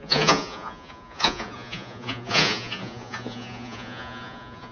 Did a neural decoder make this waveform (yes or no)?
yes